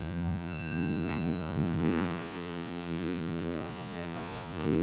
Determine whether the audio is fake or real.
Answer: fake